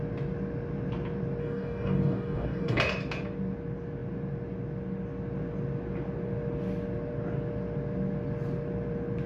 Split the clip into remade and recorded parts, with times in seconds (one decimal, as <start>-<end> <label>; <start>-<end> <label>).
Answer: 0.0-1.4 recorded; 1.4-2.8 remade; 2.8-9.3 recorded